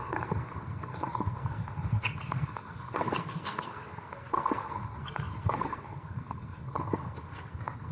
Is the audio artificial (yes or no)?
yes